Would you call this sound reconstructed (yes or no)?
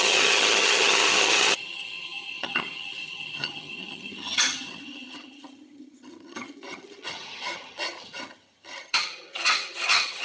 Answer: yes